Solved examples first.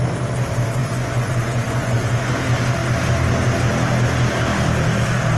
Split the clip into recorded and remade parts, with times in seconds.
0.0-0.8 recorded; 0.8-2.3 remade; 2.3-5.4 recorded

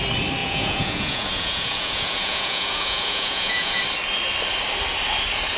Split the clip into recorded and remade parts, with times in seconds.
0.0-0.4 recorded; 0.4-3.8 remade; 3.8-5.6 recorded

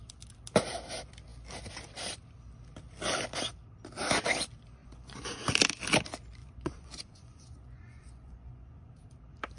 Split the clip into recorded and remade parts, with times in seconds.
0.0-4.8 recorded; 4.8-5.4 remade; 5.4-6.4 recorded; 6.4-8.9 remade; 8.9-9.6 recorded